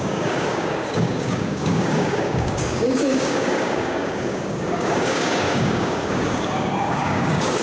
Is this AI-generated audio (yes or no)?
yes